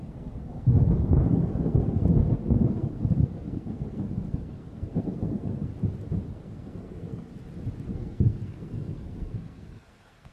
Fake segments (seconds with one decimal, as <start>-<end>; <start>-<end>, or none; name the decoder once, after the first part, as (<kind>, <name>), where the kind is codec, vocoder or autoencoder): 0.0-5.7 (codec, SNAC); 6.3-7.3; 7.9-10.3

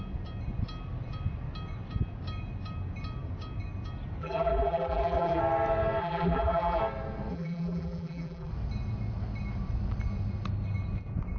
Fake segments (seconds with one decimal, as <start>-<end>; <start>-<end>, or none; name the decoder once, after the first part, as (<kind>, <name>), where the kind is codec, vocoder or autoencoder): 4.2-5.4 (vocoder, BigVGAN v2); 6.0-6.8; 7.3-8.5